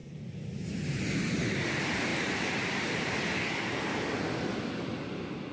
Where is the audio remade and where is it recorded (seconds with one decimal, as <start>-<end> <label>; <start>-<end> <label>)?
0.0-1.2 remade; 1.2-2.1 recorded; 2.1-3.1 remade; 3.1-5.5 recorded